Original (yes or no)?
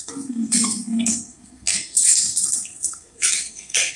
no